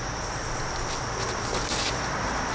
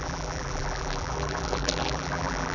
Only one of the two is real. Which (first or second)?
first